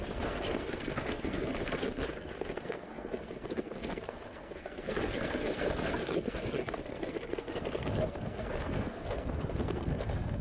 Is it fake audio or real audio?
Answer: fake